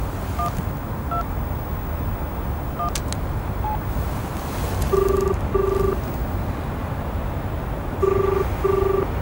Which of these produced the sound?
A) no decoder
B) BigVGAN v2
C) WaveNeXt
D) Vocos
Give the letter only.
A